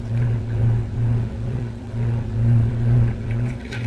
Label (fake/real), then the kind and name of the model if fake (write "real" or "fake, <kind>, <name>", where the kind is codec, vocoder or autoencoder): fake, vocoder, WaveNeXt